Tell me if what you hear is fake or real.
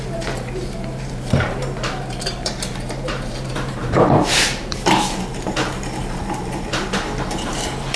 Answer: fake